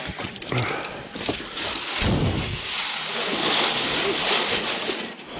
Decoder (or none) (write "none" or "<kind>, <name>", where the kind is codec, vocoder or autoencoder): none